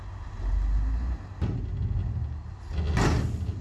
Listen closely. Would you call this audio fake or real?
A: real